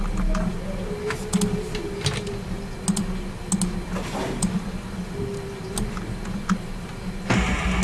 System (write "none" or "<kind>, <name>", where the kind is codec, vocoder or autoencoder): none